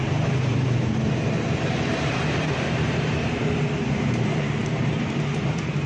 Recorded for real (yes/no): no